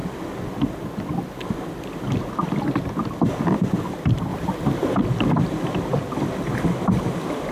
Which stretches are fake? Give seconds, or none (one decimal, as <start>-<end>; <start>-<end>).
3.9-7.5

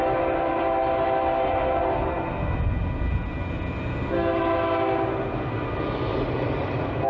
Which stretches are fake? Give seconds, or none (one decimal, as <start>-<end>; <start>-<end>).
6.1-7.1